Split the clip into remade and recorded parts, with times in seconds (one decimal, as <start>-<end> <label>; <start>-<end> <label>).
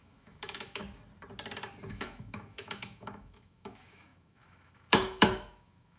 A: 0.0-0.8 remade; 0.8-1.9 recorded; 1.9-6.0 remade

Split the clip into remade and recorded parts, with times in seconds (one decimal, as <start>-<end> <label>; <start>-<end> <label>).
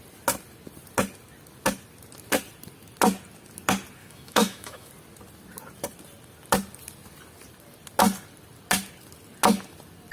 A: 0.0-4.0 recorded; 4.0-4.9 remade; 4.9-10.1 recorded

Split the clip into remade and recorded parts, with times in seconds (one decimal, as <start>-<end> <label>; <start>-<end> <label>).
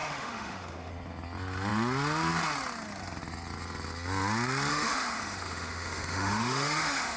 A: 0.0-0.9 remade; 0.9-4.7 recorded; 4.7-7.2 remade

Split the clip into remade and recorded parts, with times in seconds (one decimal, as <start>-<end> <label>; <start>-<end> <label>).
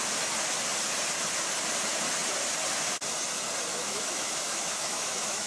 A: 0.0-3.7 recorded; 3.7-5.5 remade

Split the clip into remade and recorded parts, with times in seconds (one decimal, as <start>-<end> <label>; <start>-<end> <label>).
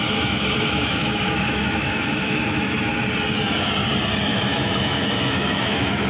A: 0.0-2.9 remade; 2.9-4.3 recorded; 4.3-6.1 remade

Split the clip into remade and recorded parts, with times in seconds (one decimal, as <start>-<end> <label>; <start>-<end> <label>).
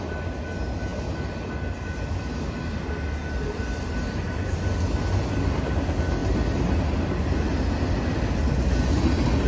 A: 0.0-9.5 recorded